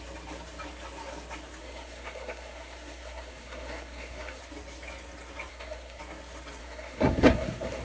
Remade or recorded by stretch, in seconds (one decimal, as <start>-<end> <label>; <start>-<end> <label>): 0.0-1.6 recorded; 1.6-4.4 remade; 4.4-5.5 recorded; 5.5-6.0 remade; 6.0-6.6 recorded; 6.6-7.8 remade